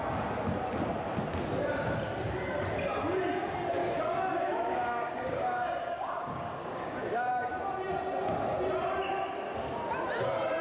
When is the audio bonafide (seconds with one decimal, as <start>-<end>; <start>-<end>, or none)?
0.0-3.8; 7.3-10.6